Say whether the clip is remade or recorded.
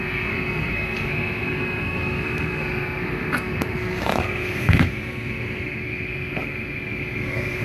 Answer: remade